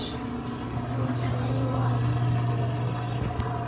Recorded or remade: recorded